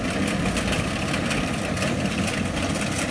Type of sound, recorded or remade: recorded